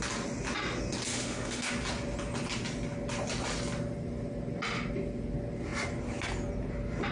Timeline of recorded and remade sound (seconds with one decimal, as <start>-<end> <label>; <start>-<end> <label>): 0.0-1.1 recorded; 1.1-1.7 remade; 1.7-7.1 recorded